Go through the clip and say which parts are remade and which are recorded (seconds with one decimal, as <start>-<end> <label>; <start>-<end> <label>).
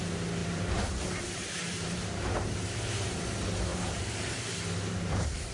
0.0-0.4 recorded; 0.4-3.2 remade; 3.2-3.7 recorded; 3.7-5.5 remade